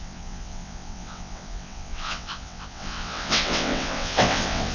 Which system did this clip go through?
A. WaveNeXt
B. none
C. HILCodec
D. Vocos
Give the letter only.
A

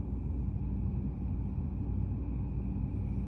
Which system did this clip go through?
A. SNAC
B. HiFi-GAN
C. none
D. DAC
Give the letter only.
C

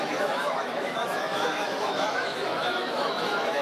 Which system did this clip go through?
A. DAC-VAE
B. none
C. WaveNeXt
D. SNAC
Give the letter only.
A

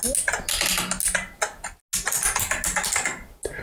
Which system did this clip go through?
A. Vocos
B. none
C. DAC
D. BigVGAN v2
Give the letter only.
B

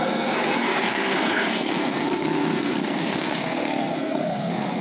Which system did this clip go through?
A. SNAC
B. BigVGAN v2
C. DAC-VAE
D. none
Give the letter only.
A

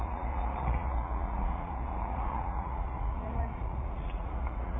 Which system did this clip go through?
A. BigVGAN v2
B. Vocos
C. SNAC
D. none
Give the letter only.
B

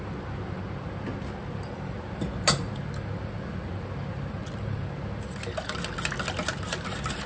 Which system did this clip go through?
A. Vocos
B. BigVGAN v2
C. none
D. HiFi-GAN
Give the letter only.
C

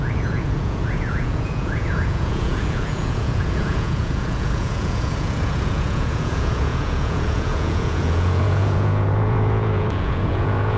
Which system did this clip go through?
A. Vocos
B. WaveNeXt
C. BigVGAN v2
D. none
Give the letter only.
A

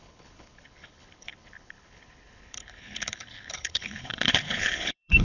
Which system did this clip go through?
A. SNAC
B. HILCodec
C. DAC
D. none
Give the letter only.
B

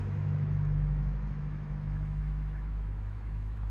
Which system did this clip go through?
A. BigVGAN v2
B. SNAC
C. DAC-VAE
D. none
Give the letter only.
C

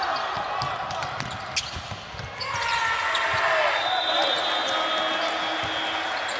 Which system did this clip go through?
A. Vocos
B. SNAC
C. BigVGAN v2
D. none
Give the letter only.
D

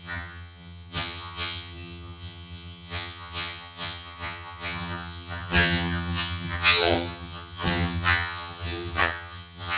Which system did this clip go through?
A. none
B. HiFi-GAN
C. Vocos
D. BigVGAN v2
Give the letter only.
B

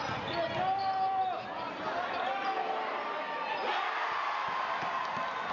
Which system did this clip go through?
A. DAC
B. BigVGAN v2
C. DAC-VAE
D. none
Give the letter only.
D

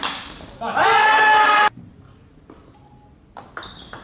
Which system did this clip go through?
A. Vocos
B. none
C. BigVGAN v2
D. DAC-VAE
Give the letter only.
B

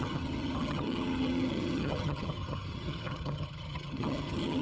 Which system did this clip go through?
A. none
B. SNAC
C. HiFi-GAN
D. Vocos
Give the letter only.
C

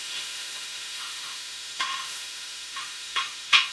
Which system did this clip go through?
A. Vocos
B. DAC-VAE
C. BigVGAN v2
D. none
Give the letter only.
B